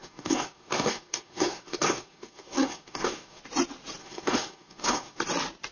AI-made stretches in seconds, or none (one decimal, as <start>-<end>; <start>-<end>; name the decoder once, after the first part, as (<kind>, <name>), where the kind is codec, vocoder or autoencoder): 0.0-3.4 (codec, SNAC); 4.0-5.2

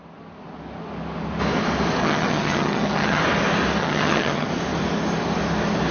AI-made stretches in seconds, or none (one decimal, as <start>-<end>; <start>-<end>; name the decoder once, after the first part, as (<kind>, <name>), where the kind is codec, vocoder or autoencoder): 2.0-3.2 (vocoder, HiFi-GAN); 3.8-4.5

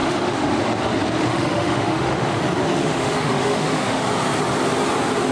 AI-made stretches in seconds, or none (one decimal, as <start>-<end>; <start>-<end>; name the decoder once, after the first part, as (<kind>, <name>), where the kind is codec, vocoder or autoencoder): 0.0-0.6 (autoencoder, DAC-VAE); 1.3-2.4; 2.8-4.0

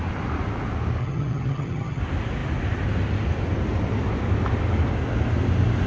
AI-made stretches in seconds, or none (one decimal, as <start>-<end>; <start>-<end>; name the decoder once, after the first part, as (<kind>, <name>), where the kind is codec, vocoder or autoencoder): 1.0-2.0 (vocoder, HiFi-GAN)

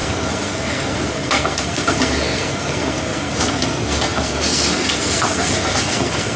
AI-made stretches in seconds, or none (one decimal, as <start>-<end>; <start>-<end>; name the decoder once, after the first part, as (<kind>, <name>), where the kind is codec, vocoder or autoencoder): 0.0-6.4 (codec, SNAC)